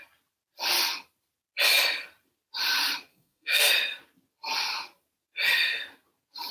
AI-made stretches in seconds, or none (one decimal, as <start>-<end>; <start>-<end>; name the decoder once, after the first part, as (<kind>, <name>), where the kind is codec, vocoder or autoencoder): 3.1-3.7 (codec, SNAC)